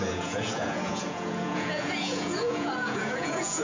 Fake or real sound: fake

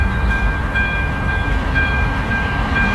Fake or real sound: fake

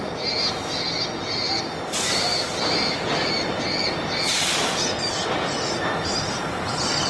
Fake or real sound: real